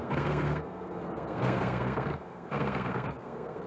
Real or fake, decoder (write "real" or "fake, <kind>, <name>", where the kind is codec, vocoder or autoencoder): fake, codec, SNAC